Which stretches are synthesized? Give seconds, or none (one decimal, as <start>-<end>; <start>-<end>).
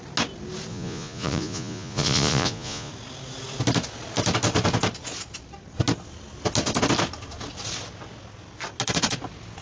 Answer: 0.7-2.9